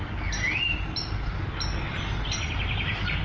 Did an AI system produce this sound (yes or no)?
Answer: no